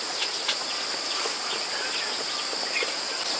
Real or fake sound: real